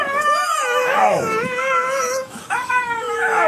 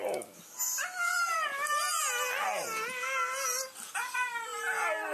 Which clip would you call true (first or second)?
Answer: second